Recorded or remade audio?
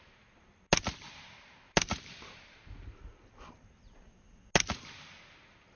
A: recorded